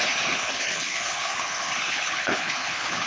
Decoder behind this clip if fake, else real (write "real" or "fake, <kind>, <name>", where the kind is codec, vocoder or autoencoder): fake, codec, HILCodec